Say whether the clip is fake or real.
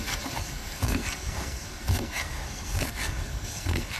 fake